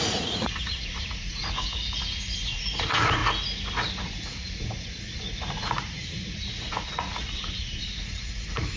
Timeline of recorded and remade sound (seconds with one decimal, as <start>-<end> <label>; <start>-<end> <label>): 0.0-3.2 remade; 3.2-3.9 recorded; 3.9-8.8 remade